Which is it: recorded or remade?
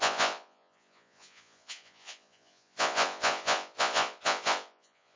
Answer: remade